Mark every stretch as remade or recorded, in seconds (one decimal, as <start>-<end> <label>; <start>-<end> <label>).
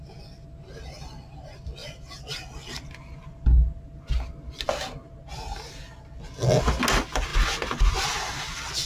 0.0-8.9 recorded